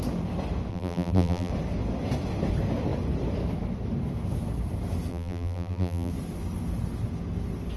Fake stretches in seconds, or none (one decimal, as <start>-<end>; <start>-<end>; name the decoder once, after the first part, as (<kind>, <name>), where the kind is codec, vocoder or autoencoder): 0.7-1.5 (vocoder, BigVGAN v2); 5.1-6.1